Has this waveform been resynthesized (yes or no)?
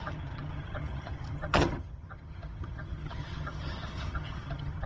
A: yes